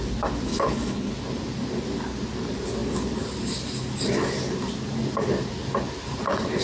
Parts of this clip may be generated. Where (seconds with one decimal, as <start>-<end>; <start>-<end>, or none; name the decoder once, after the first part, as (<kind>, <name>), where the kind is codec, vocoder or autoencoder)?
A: 0.5-1.1 (codec, HILCodec)